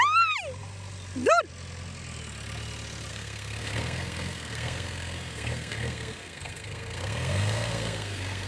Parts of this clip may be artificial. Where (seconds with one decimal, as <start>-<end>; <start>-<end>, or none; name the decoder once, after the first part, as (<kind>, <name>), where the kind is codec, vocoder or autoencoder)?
3.1-8.5 (codec, SNAC)